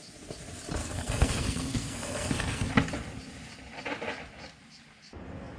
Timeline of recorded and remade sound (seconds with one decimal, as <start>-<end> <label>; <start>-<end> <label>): 0.0-0.8 recorded; 0.8-2.7 remade; 2.7-5.6 recorded